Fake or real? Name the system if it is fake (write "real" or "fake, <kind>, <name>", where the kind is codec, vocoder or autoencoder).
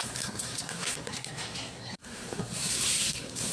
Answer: fake, codec, SNAC